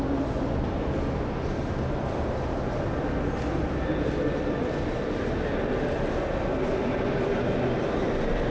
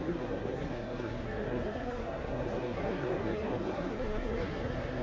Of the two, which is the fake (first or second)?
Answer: second